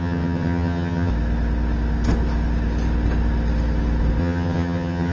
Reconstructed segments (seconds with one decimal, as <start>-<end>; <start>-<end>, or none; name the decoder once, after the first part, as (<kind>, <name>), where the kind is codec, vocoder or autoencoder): 0.0-1.1 (vocoder, HiFi-GAN); 4.2-5.1